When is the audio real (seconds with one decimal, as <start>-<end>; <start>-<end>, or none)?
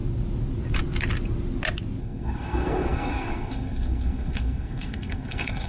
0.0-2.0